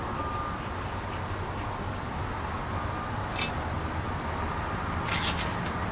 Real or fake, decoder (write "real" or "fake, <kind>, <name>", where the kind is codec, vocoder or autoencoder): real